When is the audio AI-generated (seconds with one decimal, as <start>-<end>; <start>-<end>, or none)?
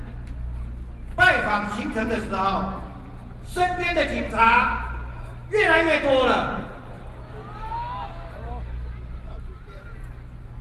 none